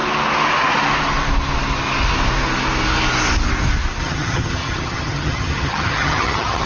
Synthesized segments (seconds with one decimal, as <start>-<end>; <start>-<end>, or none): 4.0-6.7